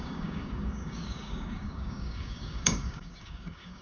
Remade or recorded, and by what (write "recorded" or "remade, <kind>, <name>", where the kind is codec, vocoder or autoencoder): remade, codec, DAC